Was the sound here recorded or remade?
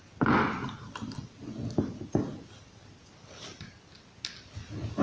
recorded